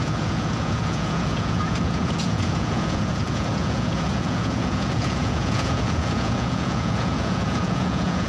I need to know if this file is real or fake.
fake